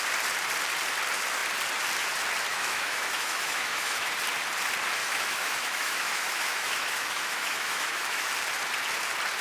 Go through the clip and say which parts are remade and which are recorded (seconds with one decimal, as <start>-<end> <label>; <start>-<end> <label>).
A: 0.0-2.5 recorded; 2.5-4.1 remade; 4.1-5.0 recorded; 5.0-8.3 remade; 8.3-9.4 recorded